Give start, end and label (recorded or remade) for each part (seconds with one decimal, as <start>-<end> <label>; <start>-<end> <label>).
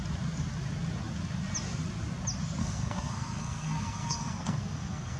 0.0-2.6 recorded; 2.6-5.2 remade